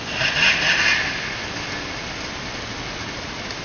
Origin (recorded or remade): recorded